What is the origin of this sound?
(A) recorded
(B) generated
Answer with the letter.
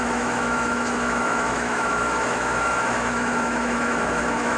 B